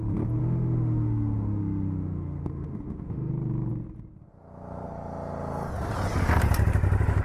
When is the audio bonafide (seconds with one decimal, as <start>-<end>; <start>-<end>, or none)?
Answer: 0.0-0.4; 3.3-7.2